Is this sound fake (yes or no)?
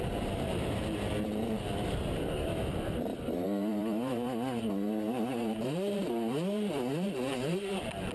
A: yes